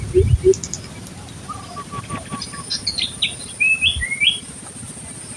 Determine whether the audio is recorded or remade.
recorded